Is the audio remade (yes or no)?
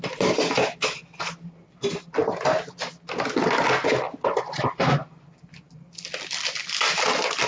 no